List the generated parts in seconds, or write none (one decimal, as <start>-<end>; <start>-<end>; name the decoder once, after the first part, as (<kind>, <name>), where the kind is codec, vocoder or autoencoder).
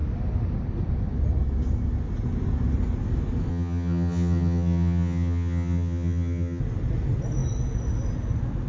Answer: 3.5-6.6 (vocoder, HiFi-GAN)